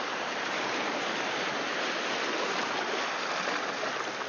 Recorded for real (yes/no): yes